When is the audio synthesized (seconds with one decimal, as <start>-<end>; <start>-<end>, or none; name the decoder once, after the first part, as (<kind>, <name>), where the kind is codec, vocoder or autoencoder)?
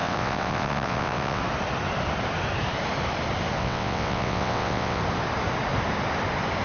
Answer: 0.0-1.4 (vocoder, WaveNeXt); 3.6-5.0